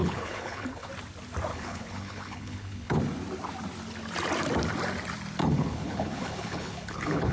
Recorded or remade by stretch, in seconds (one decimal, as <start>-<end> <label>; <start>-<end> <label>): 0.0-0.9 remade; 0.9-1.5 recorded; 1.5-3.0 remade; 3.0-5.4 recorded; 5.4-7.3 remade